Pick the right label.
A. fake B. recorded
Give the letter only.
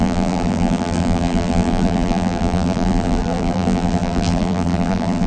A